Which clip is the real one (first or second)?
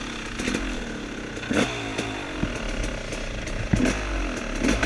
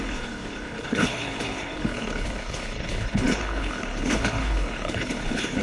first